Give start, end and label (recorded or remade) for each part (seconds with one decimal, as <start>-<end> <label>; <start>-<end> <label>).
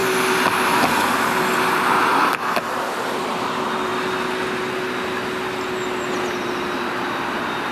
0.0-7.7 recorded